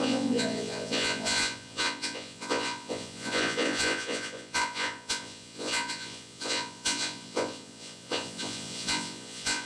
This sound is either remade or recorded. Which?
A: remade